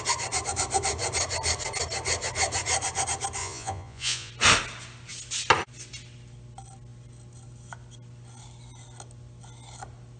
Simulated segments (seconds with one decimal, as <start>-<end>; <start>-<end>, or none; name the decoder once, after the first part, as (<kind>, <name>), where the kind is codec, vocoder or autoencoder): 3.4-4.3 (vocoder, Vocos)